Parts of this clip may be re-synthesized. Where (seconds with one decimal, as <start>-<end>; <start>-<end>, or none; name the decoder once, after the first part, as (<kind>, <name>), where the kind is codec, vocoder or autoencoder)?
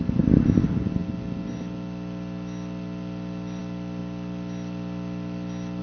none